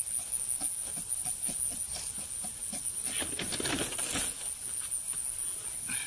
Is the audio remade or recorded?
recorded